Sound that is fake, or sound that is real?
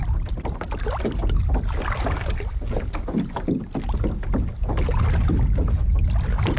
real